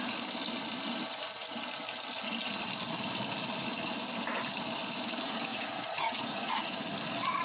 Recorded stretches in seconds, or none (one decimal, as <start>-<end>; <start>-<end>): 0.0-5.5; 6.7-7.4